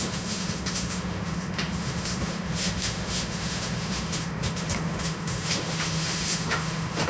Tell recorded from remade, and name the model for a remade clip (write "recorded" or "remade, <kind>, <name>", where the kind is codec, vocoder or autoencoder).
remade, autoencoder, DAC-VAE